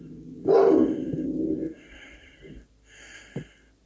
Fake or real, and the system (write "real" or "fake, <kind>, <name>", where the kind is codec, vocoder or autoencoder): real